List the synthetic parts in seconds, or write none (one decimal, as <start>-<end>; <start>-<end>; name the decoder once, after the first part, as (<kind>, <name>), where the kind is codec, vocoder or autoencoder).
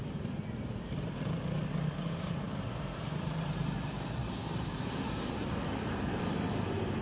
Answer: 0.0-7.0 (vocoder, BigVGAN v2)